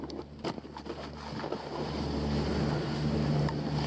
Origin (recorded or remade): recorded